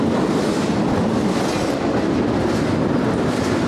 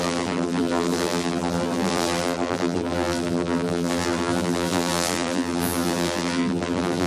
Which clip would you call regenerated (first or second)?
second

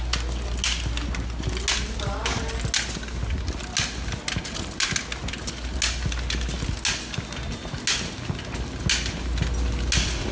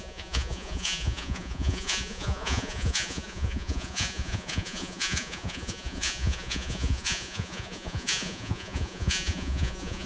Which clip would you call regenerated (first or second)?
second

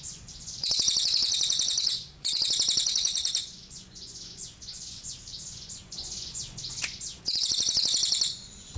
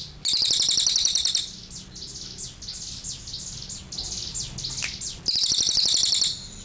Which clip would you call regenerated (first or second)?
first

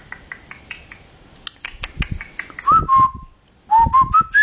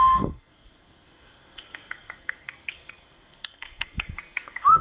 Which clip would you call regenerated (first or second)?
second